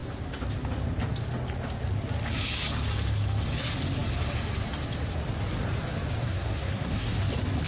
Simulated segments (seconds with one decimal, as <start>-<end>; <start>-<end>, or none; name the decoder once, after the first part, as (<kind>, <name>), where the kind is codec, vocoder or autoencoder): 6.2-7.2 (codec, SNAC)